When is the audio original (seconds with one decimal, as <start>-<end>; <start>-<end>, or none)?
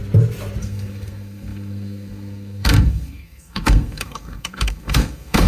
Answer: 0.0-0.6